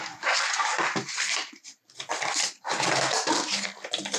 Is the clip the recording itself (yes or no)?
yes